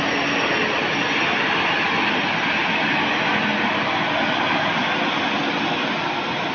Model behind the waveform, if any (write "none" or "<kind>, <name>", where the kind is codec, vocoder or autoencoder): none